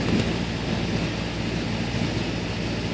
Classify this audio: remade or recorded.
recorded